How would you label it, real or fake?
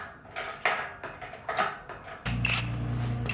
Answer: real